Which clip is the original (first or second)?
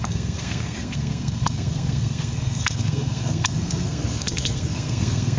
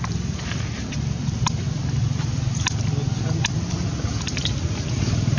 second